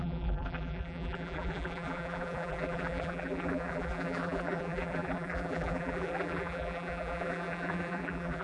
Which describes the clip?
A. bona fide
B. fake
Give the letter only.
B